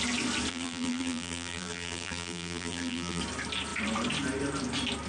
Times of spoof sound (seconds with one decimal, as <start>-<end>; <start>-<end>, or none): 0.5-3.2